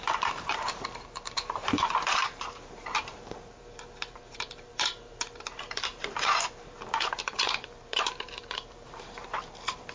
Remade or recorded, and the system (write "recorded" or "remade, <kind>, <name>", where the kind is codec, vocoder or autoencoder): remade, vocoder, BigVGAN v2